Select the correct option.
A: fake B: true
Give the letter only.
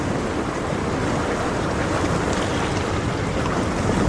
B